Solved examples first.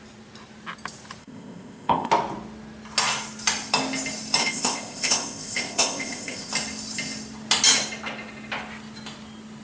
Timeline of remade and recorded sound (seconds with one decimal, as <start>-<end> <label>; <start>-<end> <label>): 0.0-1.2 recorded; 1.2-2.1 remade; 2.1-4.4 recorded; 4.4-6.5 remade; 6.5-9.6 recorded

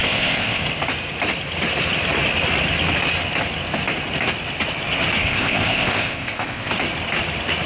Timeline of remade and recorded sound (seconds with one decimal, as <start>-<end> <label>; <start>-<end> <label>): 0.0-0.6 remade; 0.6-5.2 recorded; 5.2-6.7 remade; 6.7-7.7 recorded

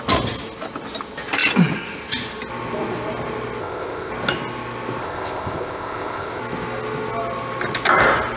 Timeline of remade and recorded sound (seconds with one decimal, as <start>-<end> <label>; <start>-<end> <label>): 0.0-3.6 recorded; 3.6-4.1 remade; 4.1-5.0 recorded; 5.0-6.4 remade; 6.4-8.4 recorded